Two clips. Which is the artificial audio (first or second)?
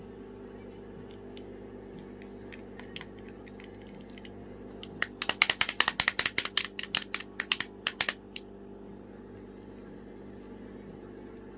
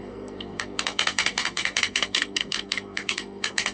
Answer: second